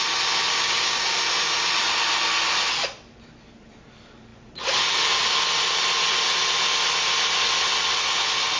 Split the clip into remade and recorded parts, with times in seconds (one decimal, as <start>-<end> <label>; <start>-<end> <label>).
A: 0.0-0.5 recorded; 0.5-1.2 remade; 1.2-8.6 recorded